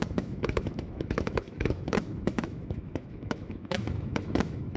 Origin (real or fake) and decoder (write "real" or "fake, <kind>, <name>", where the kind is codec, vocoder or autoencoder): fake, autoencoder, DAC-VAE